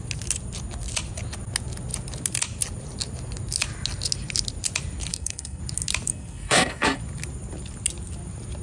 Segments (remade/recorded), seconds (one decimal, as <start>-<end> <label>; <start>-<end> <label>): 0.0-5.1 recorded; 5.1-5.6 remade; 5.6-6.1 recorded; 6.1-7.0 remade; 7.0-8.6 recorded